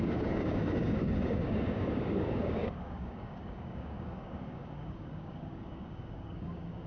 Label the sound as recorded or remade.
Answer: remade